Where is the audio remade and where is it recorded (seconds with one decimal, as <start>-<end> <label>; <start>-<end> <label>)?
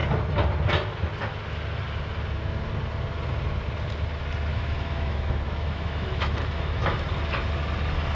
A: 0.0-4.5 recorded; 4.5-7.0 remade; 7.0-8.2 recorded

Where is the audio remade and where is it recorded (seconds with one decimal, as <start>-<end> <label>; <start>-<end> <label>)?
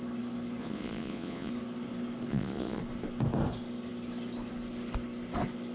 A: 0.0-0.6 recorded; 0.6-1.5 remade; 1.5-2.3 recorded; 2.3-2.8 remade; 2.8-5.7 recorded